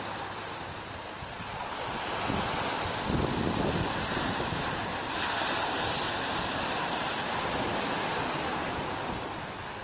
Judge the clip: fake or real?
real